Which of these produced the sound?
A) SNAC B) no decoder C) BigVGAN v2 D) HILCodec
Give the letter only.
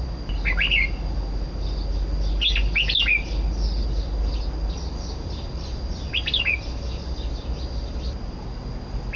B